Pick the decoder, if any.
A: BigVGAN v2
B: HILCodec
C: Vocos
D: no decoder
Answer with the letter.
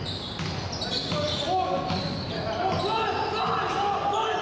D